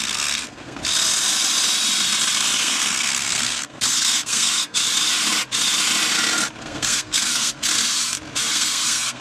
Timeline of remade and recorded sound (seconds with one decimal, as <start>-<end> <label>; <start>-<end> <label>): 0.0-0.8 remade; 0.8-2.6 recorded; 2.6-4.8 remade; 4.8-6.6 recorded; 6.6-7.7 remade; 7.7-8.5 recorded; 8.5-9.2 remade